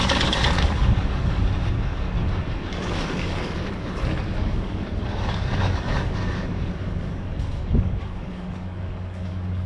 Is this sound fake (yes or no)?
yes